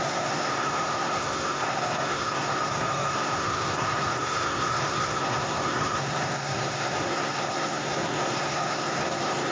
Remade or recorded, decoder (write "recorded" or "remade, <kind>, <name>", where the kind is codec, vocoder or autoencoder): remade, codec, SNAC